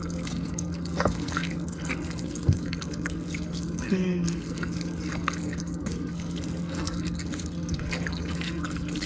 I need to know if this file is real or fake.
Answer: fake